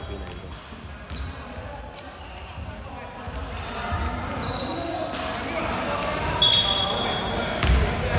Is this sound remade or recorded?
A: recorded